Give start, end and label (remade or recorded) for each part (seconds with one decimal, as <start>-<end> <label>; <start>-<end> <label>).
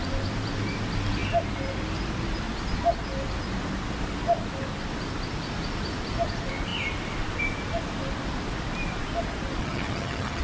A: 0.0-9.6 recorded; 9.6-10.4 remade